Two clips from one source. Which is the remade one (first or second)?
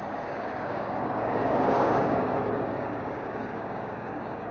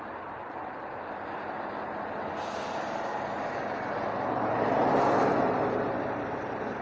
first